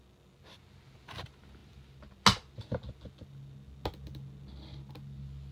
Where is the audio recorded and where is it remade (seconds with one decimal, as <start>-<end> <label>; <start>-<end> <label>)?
0.0-5.5 recorded